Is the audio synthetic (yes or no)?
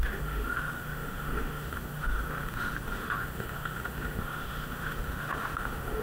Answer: yes